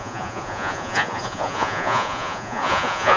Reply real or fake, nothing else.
fake